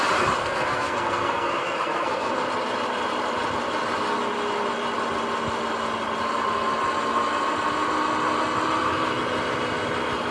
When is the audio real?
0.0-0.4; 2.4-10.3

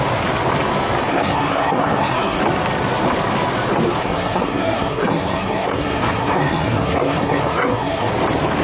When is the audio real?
0.0-1.1; 2.4-4.0; 8.1-8.6

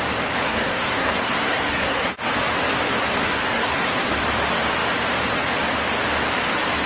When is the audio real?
0.0-0.5; 2.1-3.2; 4.2-6.9

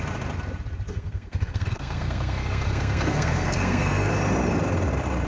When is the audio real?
0.0-0.9; 4.1-5.3

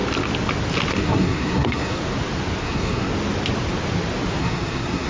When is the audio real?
0.0-0.9; 2.0-2.6; 3.1-4.4